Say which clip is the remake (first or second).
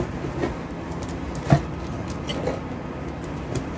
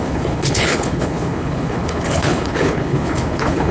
second